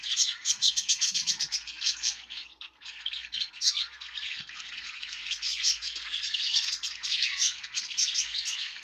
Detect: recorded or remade remade